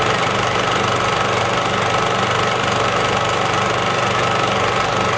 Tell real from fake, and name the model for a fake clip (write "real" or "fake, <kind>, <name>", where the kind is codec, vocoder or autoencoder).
real